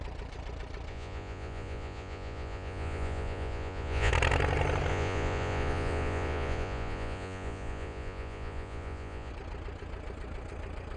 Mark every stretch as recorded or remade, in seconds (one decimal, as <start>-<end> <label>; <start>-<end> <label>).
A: 0.0-0.9 recorded; 0.9-4.1 remade; 4.1-4.9 recorded; 4.9-9.3 remade; 9.3-11.0 recorded